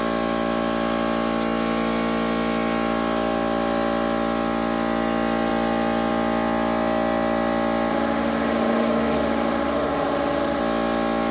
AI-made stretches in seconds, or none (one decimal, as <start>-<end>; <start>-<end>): 7.9-10.6